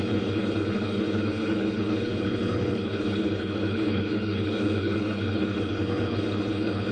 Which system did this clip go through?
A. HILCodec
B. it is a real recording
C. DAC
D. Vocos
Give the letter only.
A